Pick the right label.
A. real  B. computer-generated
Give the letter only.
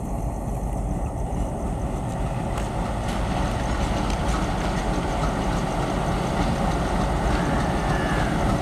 A